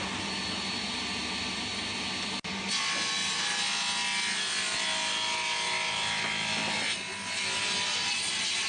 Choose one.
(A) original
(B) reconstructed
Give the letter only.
A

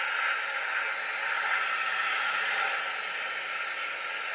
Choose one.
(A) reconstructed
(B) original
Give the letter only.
B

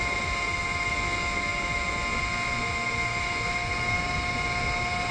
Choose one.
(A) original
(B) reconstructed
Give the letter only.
A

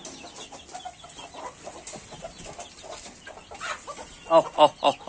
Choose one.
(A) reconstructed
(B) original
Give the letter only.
B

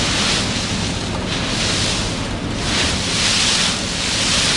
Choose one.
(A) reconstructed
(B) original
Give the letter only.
B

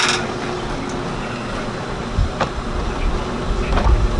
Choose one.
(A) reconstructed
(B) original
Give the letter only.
B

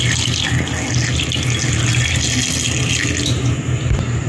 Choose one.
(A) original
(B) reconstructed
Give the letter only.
A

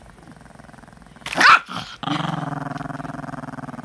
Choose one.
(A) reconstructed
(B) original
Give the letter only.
B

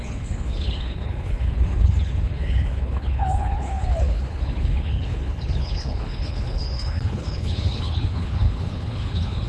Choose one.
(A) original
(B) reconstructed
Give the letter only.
B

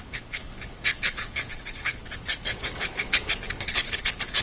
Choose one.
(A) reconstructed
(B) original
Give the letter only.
A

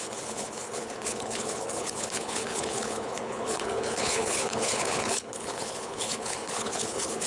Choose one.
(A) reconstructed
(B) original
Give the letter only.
A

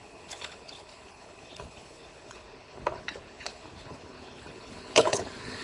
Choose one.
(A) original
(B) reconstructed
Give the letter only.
B